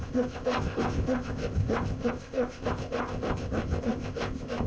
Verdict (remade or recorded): remade